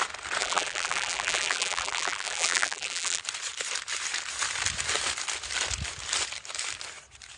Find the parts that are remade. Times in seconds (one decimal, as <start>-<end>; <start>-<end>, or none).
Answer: 0.4-3.2